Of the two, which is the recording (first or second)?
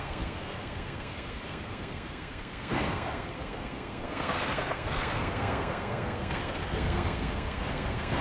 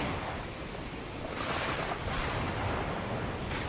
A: second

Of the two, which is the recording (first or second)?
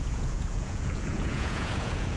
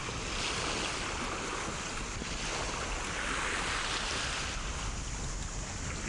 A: second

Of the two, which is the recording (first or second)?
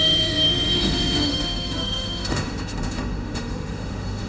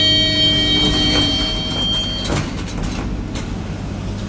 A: second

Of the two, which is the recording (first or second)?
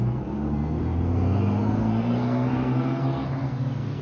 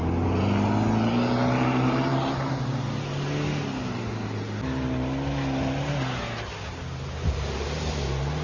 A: second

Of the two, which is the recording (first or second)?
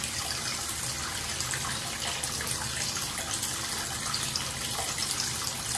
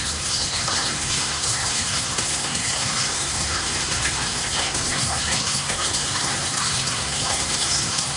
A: first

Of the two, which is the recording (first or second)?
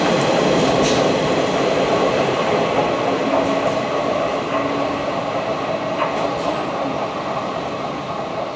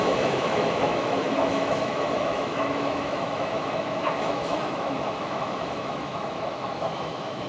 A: first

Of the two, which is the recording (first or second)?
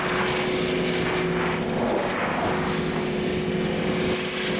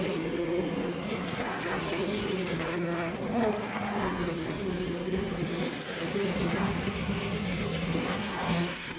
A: first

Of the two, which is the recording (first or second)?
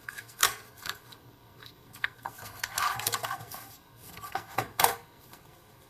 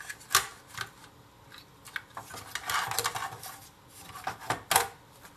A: second